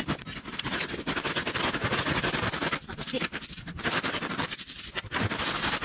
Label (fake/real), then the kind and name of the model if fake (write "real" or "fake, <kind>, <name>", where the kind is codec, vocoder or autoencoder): real